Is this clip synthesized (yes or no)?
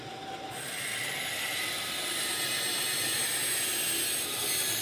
no